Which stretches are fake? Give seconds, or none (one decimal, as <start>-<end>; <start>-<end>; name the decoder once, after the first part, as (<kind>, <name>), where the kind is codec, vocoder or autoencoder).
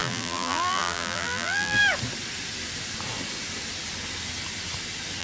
0.0-1.8 (vocoder, BigVGAN v2)